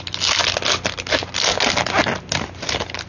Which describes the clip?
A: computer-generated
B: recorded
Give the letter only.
B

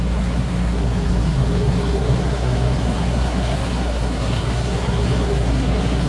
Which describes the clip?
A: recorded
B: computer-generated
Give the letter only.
B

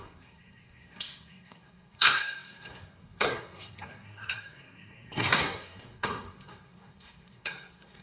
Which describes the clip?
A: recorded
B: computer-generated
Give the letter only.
B